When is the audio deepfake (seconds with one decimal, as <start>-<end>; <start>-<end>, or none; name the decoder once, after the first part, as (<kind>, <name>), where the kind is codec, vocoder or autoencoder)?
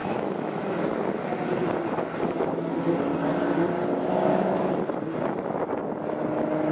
0.0-0.6 (autoencoder, DAC-VAE)